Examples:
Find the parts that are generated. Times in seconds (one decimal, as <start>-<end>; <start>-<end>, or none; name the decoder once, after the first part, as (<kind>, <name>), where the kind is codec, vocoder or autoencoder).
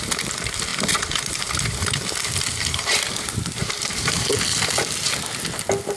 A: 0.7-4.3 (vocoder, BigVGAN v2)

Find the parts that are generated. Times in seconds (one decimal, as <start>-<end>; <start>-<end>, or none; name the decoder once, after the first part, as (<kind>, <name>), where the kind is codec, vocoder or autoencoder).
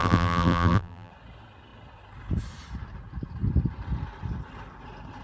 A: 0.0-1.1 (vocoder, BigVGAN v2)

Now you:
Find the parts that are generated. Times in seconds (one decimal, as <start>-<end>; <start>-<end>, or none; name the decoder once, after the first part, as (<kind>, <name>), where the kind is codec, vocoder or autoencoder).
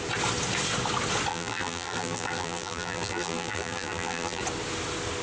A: 1.3-4.4 (vocoder, BigVGAN v2)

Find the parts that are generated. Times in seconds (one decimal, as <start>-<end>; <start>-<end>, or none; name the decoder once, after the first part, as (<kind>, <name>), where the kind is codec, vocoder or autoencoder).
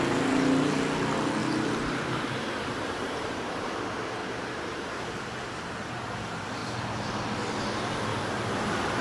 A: 1.4-3.7 (vocoder, BigVGAN v2); 4.2-5.9; 6.6-7.3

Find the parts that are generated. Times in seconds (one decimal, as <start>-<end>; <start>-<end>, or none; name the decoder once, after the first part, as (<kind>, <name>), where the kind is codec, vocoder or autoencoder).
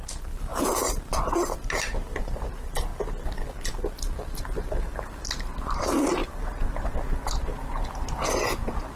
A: 0.5-1.2 (vocoder, BigVGAN v2); 6.2-6.9